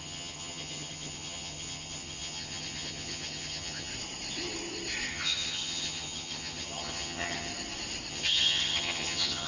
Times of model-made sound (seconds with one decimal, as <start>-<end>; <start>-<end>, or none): 0.0-3.9; 5.1-7.5; 8.1-9.5